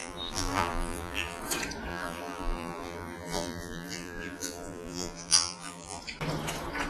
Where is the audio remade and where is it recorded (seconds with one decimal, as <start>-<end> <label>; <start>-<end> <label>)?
0.0-1.4 remade; 1.4-1.9 recorded; 1.9-6.0 remade; 6.0-6.9 recorded